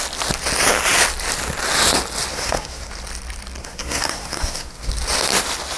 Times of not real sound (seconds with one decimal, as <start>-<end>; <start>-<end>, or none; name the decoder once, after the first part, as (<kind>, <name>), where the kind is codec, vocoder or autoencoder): 2.3-2.9 (codec, SNAC); 3.6-4.9